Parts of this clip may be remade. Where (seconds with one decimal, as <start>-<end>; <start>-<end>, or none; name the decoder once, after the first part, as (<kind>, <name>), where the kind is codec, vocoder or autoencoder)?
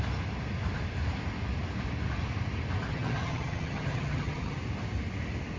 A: 2.9-4.6 (vocoder, HiFi-GAN)